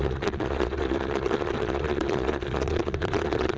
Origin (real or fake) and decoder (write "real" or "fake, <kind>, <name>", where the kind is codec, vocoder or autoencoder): fake, vocoder, Vocos